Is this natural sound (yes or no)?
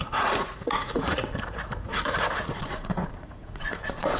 no